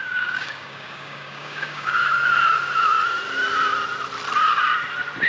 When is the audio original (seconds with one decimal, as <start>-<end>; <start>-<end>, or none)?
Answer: 2.0-5.3